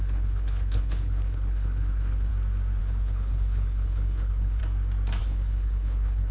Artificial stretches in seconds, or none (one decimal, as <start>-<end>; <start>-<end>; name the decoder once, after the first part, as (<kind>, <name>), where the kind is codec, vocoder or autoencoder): 0.0-2.3 (codec, HILCodec); 2.8-4.6; 5.2-6.3